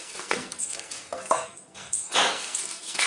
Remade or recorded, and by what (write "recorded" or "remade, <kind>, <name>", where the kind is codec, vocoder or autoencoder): remade, codec, SNAC